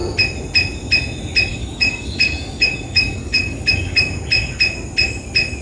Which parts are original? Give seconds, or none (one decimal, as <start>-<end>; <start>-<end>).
0.0-1.5; 4.1-5.6